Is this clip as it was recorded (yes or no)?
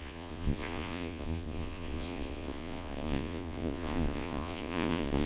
no